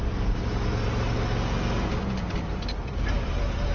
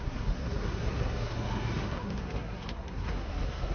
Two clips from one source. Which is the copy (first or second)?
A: second